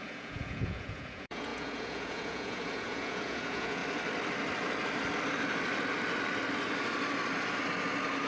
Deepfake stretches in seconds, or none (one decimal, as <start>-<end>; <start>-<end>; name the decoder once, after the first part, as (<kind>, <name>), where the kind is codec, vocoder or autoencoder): 0.0-3.8 (vocoder, Vocos)